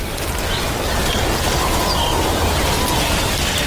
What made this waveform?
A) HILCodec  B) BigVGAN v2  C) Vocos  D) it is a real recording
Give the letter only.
D